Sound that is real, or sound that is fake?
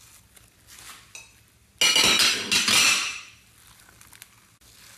real